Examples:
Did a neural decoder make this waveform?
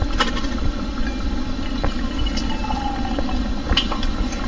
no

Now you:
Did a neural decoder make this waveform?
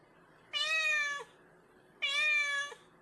no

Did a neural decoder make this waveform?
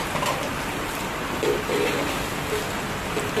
no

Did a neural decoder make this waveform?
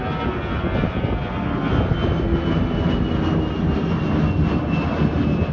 no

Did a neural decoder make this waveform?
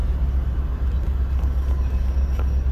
no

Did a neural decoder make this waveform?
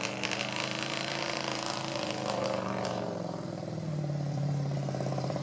yes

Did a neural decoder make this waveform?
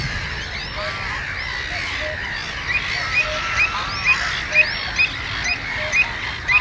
no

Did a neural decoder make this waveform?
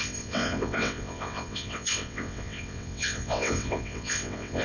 yes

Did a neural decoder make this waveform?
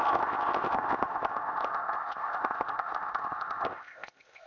yes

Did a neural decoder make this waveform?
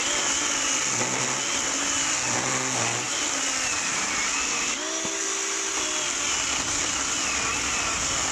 no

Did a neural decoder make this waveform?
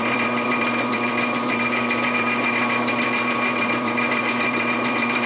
yes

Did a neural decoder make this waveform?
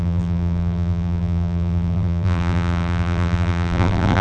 yes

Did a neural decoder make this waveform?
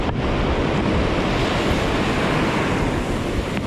no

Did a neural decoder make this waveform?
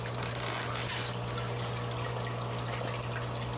no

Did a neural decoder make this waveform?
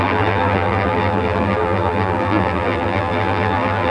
yes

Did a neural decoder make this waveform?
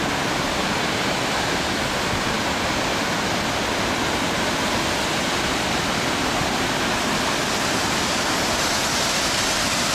no